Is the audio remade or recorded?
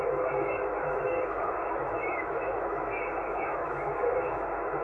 remade